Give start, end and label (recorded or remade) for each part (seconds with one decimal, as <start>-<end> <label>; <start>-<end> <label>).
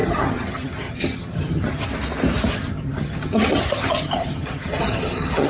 0.0-1.9 remade; 1.9-2.5 recorded; 2.5-5.5 remade